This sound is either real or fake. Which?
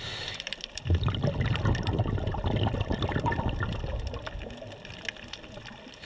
real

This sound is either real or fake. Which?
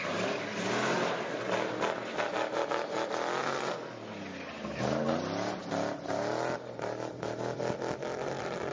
real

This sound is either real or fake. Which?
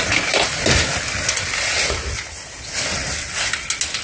real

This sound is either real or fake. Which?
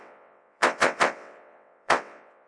fake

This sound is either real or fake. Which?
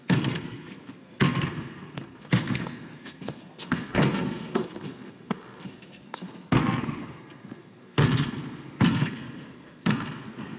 fake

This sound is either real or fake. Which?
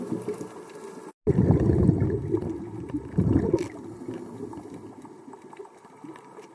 real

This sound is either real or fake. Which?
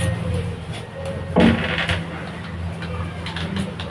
real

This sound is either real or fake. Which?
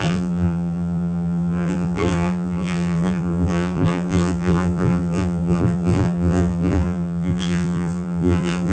fake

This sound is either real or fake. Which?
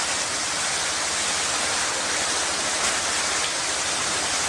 real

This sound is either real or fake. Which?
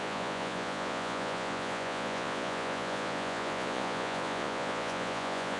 fake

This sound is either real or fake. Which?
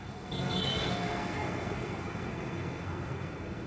fake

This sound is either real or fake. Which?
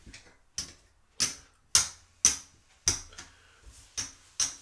real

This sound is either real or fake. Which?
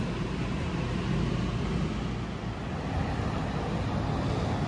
real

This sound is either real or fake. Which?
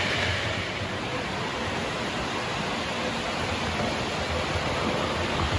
real